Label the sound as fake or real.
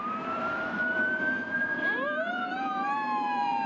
fake